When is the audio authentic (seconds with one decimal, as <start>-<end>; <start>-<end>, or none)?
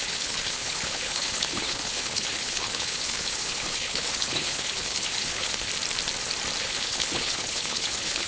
5.7-6.6